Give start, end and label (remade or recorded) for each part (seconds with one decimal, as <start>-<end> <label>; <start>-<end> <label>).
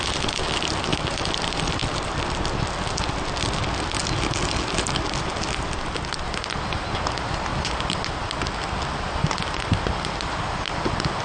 0.0-0.9 recorded; 0.9-2.8 remade; 2.8-11.2 recorded